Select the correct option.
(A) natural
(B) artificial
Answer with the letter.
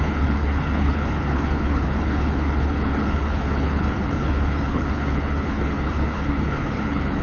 B